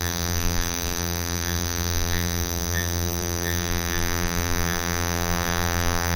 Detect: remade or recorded remade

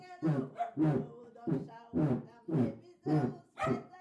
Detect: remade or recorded recorded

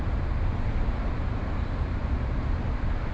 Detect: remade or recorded recorded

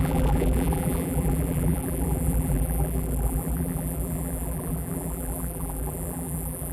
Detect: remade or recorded remade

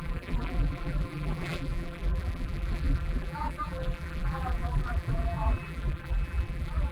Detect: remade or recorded remade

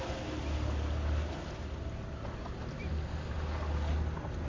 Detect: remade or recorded recorded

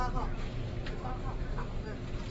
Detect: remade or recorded recorded